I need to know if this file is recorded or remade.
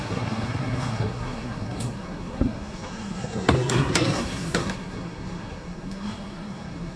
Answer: remade